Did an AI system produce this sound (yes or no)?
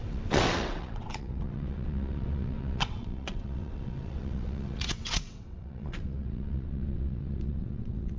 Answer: yes